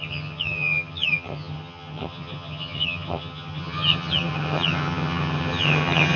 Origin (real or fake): fake